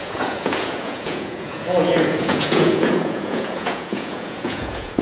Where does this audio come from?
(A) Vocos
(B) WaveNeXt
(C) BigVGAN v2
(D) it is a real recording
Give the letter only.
A